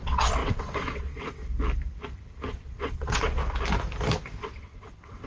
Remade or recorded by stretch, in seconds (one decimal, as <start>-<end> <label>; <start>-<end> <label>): 0.0-1.4 remade; 1.4-2.5 recorded; 2.5-3.4 remade; 3.4-4.4 recorded; 4.4-5.3 remade